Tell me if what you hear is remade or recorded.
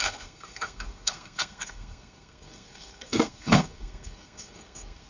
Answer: remade